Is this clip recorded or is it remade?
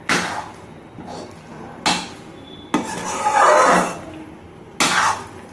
recorded